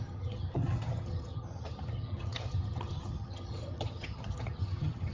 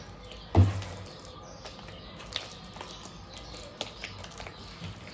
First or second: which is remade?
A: first